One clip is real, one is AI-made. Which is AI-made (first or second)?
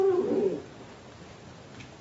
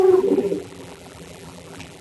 second